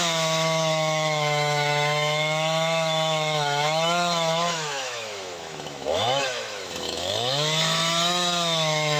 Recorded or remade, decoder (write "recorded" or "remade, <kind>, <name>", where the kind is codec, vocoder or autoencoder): remade, autoencoder, DAC-VAE